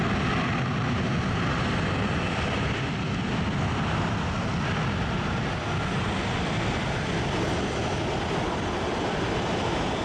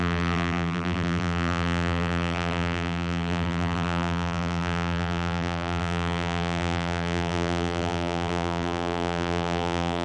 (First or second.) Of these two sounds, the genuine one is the first